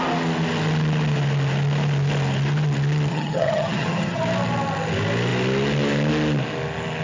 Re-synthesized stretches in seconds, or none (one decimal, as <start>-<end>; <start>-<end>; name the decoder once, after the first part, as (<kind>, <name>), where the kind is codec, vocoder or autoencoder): 3.1-4.2 (vocoder, HiFi-GAN)